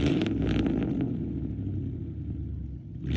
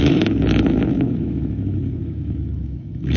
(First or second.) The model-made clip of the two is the second